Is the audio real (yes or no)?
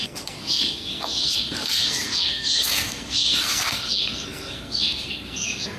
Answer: no